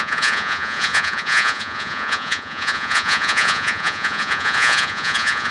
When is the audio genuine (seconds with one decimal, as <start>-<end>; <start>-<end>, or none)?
none